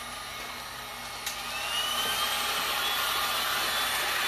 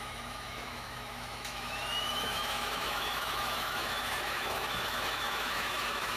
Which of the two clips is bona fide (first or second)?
first